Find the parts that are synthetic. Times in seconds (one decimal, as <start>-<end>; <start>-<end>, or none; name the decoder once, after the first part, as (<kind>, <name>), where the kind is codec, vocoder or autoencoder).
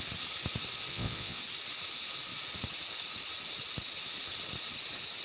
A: 0.9-1.4 (vocoder, Vocos)